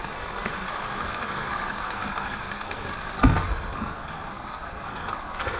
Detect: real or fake fake